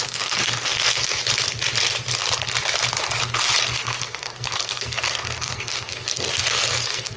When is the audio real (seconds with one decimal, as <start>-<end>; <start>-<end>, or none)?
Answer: 1.2-3.6

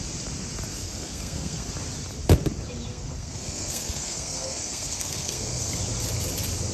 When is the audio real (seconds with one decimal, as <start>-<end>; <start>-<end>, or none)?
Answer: 0.0-0.7; 1.7-2.9; 5.8-6.7

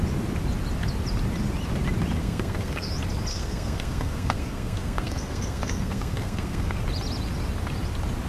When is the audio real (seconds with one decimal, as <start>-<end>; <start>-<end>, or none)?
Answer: 0.0-2.2; 2.9-3.3; 6.8-8.3

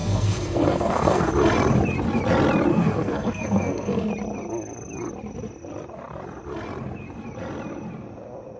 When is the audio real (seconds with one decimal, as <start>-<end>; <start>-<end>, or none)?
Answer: 1.3-2.7; 4.1-8.6

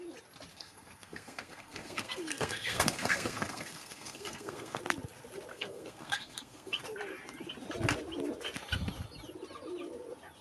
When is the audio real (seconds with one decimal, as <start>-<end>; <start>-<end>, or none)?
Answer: 0.0-0.5; 4.8-5.5; 6.8-10.4

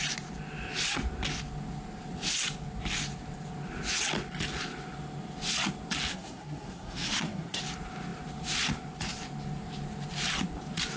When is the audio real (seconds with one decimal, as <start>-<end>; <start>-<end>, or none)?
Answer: 0.0-6.1; 7.6-11.0